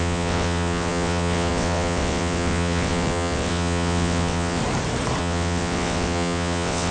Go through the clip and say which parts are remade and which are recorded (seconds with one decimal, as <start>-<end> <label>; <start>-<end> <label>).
0.0-4.6 remade; 4.6-5.2 recorded; 5.2-6.9 remade